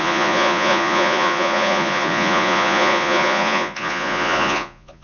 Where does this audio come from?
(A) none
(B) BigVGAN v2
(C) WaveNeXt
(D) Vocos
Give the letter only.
D